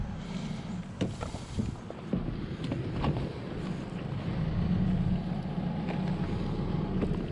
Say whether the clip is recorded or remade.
recorded